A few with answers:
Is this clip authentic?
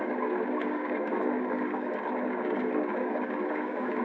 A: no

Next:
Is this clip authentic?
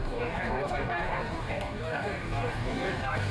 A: no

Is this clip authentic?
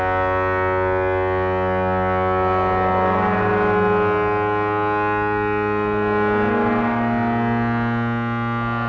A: yes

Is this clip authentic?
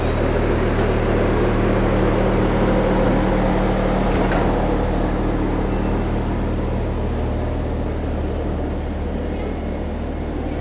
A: yes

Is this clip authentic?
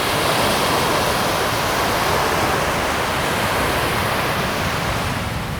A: yes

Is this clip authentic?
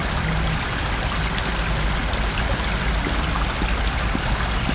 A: yes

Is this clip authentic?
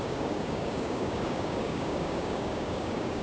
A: no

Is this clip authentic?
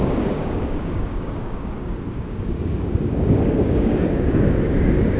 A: no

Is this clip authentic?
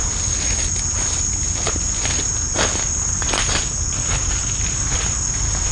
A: yes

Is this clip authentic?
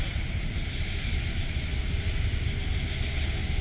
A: yes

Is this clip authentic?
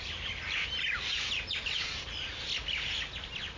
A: yes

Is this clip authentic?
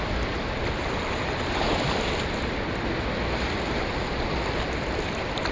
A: yes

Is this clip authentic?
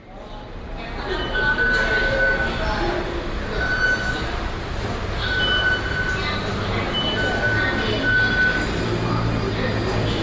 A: yes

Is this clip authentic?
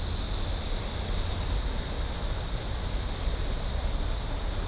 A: yes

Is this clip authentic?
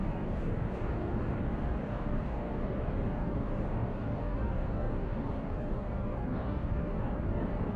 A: no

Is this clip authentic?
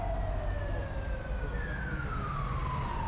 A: yes